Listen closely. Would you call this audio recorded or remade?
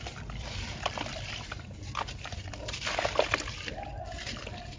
remade